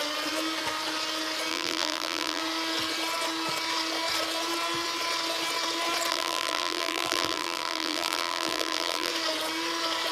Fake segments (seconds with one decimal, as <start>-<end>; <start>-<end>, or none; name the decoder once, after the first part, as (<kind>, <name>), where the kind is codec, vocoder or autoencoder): 1.5-2.4 (vocoder, BigVGAN v2); 6.1-9.1